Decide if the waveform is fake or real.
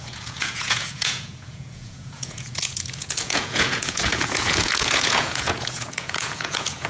fake